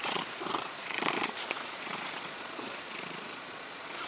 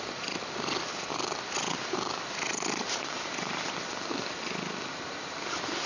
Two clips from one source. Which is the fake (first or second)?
first